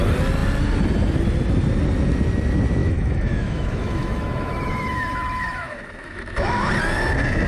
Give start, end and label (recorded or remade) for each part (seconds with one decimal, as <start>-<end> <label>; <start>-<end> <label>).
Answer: 0.0-2.8 recorded; 2.8-6.7 remade; 6.7-7.5 recorded

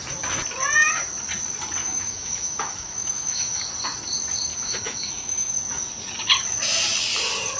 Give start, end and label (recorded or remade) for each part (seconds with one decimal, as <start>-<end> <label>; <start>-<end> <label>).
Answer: 0.0-1.8 recorded; 1.8-3.6 remade; 3.6-4.5 recorded; 4.5-5.5 remade; 5.5-7.6 recorded